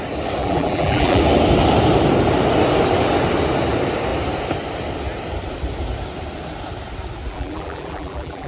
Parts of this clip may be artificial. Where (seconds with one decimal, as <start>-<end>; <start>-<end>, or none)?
0.4-1.2; 7.3-8.5